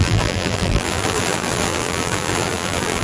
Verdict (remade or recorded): remade